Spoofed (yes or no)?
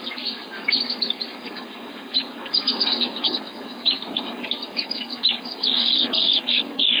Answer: yes